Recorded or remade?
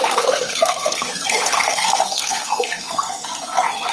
remade